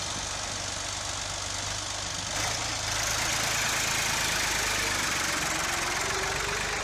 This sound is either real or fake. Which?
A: real